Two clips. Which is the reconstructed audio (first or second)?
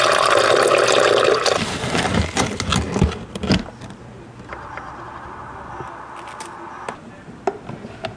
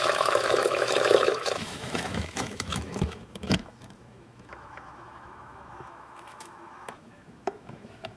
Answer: second